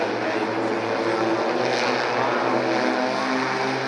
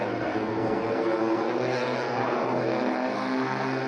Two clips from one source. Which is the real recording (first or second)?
first